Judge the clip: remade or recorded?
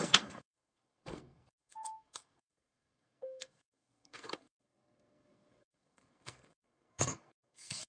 remade